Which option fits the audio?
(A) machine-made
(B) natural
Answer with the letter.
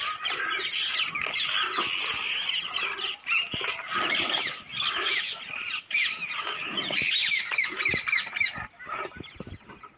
B